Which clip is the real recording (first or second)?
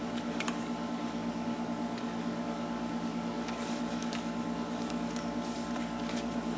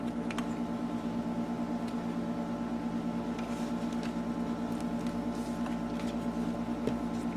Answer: second